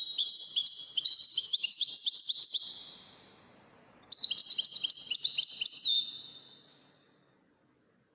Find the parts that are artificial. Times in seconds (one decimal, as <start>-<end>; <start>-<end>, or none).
1.3-1.9